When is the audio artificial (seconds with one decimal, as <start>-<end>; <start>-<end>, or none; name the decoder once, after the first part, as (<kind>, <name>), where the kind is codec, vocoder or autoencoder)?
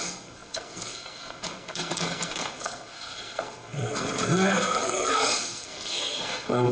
0.0-6.7 (codec, SNAC)